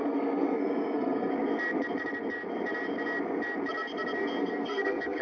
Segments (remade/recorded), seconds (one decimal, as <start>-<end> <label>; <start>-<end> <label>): 0.0-1.3 remade; 1.3-4.4 recorded; 4.4-5.2 remade

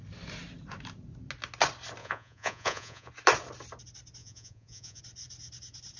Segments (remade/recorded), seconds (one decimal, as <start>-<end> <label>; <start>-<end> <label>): 0.0-2.0 recorded; 2.0-3.1 remade; 3.1-4.2 recorded; 4.2-5.0 remade; 5.0-6.0 recorded

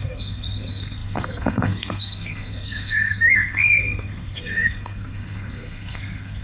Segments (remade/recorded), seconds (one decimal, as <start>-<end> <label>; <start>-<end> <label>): 0.0-6.4 remade

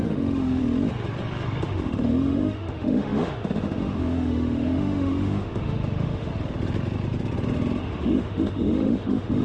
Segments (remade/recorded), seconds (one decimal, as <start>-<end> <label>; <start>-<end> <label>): 0.0-0.6 remade; 0.6-1.6 recorded; 1.6-6.3 remade; 6.3-7.8 recorded; 7.8-9.4 remade

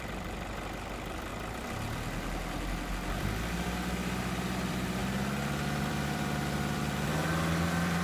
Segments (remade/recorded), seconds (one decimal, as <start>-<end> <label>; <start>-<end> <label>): 0.0-1.3 remade; 1.3-2.9 recorded; 2.9-5.0 remade; 5.0-5.8 recorded; 5.8-8.0 remade

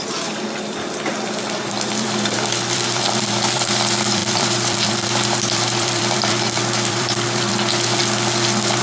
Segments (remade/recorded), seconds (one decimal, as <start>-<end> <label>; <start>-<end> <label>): 0.0-8.0 remade; 8.0-8.8 recorded

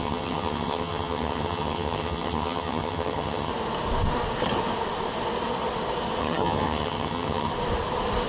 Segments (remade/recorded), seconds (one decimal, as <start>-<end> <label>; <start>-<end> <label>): 0.0-3.5 remade; 3.5-6.2 recorded; 6.2-7.5 remade; 7.5-8.3 recorded